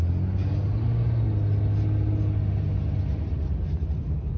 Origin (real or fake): real